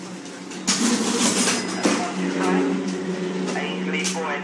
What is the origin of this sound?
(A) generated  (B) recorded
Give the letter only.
B